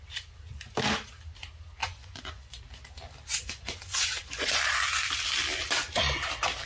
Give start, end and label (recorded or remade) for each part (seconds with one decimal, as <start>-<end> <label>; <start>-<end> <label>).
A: 0.0-1.8 recorded; 1.8-2.6 remade; 2.6-3.3 recorded; 3.3-4.6 remade; 4.6-6.7 recorded